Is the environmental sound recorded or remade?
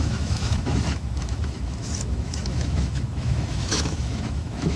remade